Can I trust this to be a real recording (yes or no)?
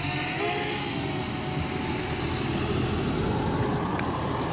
yes